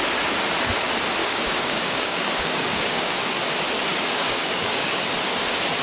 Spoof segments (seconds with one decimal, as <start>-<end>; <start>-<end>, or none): 1.2-3.1; 3.9-5.0